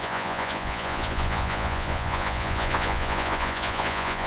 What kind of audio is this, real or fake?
fake